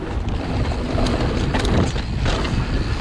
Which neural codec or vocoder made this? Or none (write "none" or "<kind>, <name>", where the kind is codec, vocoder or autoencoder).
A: none